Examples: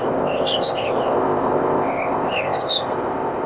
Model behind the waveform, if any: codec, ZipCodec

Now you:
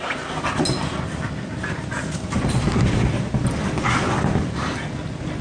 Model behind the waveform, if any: none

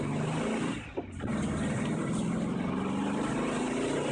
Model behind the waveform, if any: none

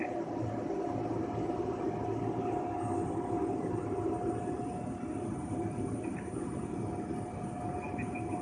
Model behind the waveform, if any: none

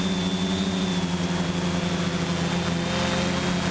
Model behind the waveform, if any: none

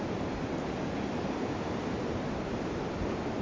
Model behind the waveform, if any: none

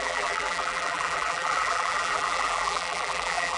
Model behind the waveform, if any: vocoder, BigVGAN v2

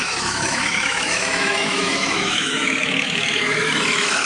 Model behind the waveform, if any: autoencoder, DAC-VAE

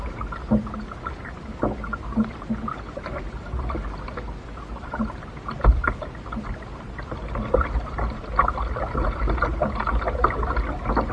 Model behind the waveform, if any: none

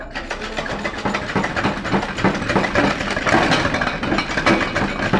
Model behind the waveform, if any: none